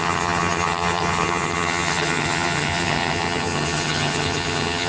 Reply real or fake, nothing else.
fake